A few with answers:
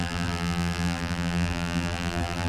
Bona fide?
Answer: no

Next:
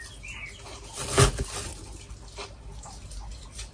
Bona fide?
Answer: yes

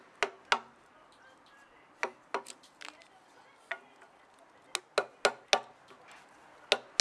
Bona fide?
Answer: yes